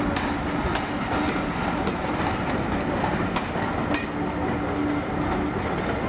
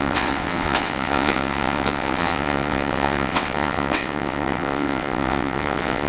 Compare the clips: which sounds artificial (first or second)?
second